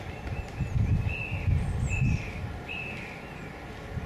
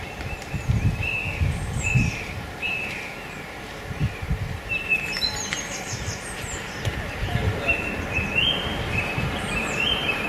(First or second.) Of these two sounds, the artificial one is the second